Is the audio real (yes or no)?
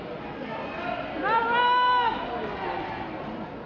yes